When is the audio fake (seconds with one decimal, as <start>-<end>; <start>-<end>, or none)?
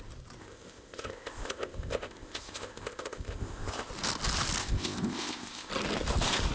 0.4-3.9; 4.6-5.7